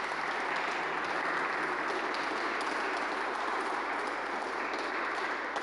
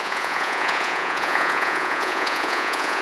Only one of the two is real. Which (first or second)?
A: first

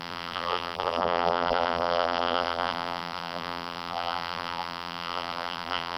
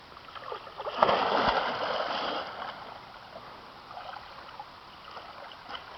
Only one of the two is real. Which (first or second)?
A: second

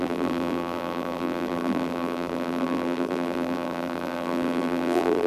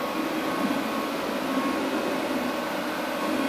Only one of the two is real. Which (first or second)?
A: second